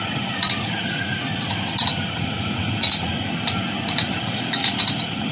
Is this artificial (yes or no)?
yes